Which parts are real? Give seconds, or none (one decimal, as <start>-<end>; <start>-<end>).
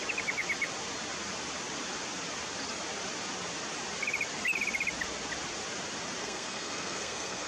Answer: 0.0-6.2